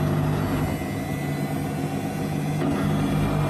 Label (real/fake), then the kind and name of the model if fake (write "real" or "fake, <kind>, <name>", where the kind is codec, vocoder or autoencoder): real